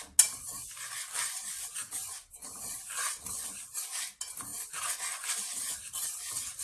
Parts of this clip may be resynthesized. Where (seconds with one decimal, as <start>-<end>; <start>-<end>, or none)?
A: 1.8-3.1